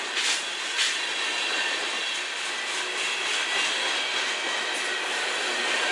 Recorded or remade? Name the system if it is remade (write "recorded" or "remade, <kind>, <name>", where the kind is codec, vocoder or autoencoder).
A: recorded